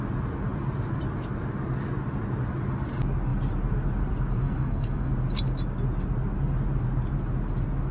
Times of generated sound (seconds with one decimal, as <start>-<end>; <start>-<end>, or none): 4.4-5.1